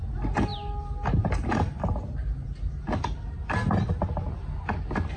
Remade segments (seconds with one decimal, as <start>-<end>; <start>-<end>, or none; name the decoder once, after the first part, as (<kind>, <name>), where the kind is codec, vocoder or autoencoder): none